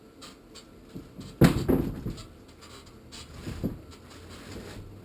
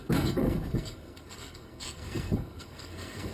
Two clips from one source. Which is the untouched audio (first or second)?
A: first